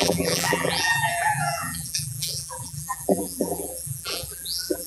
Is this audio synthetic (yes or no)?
yes